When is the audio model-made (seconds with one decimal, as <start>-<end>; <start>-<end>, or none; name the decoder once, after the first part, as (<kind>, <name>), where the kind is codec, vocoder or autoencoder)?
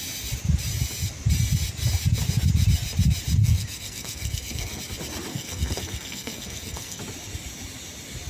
3.4-4.8 (codec, SNAC); 5.3-7.0